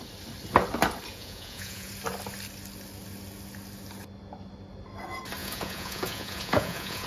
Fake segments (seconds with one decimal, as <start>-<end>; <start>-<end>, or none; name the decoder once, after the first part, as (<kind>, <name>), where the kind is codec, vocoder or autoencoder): 1.1-1.9 (vocoder, Vocos); 5.4-7.1